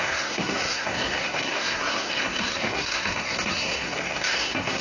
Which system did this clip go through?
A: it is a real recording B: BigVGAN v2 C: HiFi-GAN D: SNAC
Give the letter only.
D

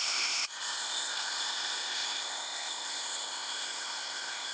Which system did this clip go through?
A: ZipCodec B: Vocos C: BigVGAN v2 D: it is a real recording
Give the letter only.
A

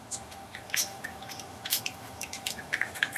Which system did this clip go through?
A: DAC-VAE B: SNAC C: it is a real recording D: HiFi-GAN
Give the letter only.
A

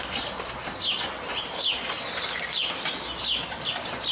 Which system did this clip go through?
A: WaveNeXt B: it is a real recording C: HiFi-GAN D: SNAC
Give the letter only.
B